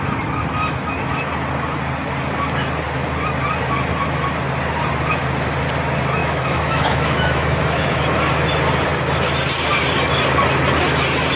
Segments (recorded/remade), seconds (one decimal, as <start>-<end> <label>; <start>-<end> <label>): 0.0-6.2 recorded; 6.2-8.0 remade; 8.0-11.4 recorded